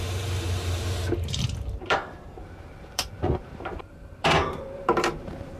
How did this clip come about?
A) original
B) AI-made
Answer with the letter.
B